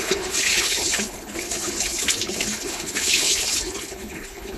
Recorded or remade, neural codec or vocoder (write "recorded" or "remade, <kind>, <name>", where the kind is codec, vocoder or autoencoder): remade, codec, HILCodec